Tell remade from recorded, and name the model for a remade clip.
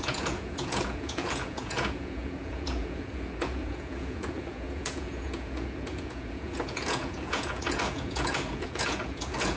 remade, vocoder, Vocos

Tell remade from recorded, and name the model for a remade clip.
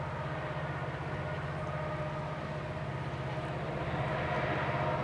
recorded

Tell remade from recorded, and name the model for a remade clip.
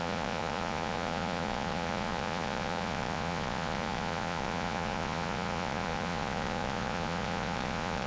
remade, vocoder, Vocos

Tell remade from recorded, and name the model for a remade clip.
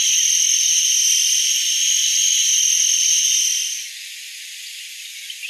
recorded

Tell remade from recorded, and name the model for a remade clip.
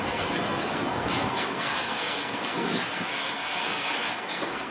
remade, codec, SNAC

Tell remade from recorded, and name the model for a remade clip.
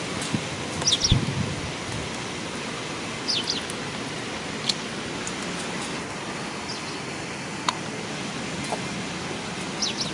recorded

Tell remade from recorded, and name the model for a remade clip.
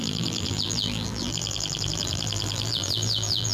remade, vocoder, BigVGAN v2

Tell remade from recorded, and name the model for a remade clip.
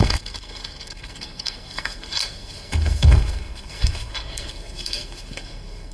remade, codec, SNAC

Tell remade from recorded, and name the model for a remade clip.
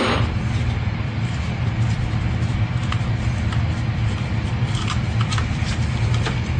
recorded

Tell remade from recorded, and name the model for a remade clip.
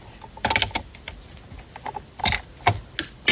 recorded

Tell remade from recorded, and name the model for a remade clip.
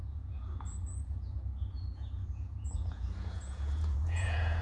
remade, vocoder, Vocos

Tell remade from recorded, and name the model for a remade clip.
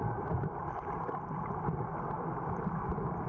recorded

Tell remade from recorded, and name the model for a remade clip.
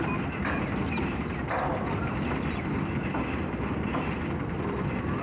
recorded